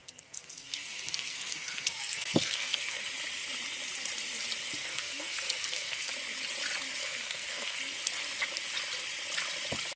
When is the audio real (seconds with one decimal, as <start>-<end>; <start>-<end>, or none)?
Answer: 3.0-4.8; 6.1-7.0; 7.8-10.0